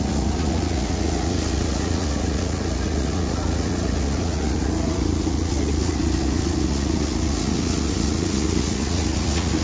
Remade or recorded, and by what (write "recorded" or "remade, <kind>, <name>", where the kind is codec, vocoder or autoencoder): remade, vocoder, Vocos